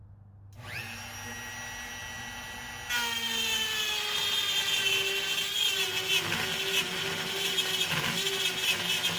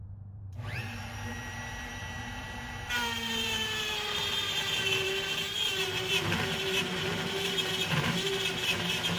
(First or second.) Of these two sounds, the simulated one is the second